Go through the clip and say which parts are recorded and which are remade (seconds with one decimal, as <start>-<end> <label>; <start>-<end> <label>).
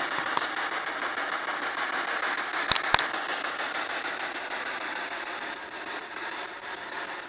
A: 0.0-2.5 recorded; 2.5-7.3 remade